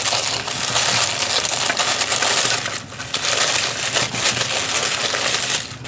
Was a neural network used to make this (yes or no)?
no